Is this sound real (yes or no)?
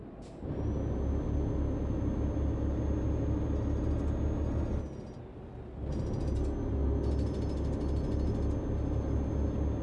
yes